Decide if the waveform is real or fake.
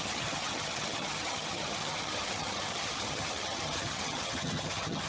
fake